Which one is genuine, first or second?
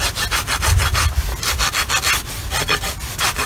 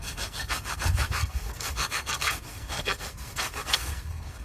first